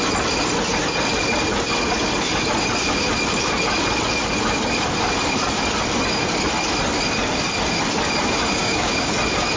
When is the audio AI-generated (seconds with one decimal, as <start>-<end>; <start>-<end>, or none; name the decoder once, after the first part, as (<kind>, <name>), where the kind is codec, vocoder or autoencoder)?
8.6-9.1 (codec, DAC)